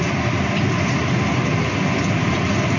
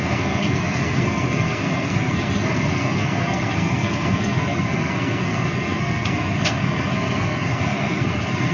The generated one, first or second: second